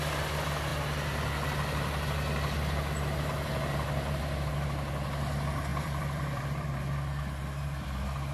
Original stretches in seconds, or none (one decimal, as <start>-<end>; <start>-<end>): 0.0-5.7; 7.2-8.3